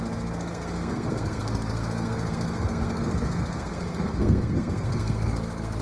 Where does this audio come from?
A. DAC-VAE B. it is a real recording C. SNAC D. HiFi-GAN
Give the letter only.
C